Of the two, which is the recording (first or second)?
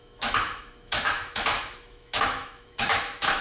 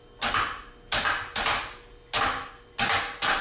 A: second